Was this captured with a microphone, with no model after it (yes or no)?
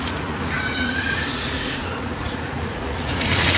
no